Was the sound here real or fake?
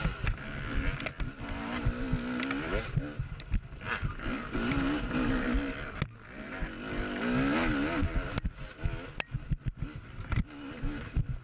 real